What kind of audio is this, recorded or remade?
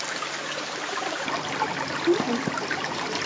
recorded